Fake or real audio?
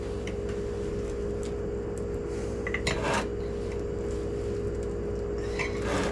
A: real